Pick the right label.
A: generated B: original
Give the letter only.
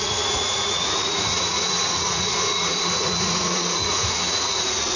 A